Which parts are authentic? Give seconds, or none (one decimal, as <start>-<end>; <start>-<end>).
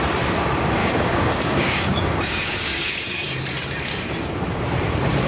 0.0-0.8; 3.0-5.3